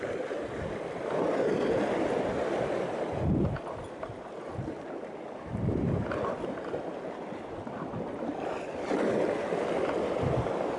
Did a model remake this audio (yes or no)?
yes